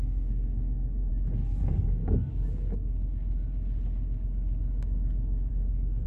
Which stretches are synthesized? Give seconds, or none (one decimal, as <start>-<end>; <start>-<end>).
0.0-1.1; 1.6-2.0; 5.5-6.1